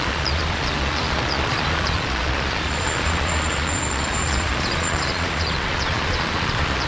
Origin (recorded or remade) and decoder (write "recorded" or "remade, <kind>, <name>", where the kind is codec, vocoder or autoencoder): remade, vocoder, Vocos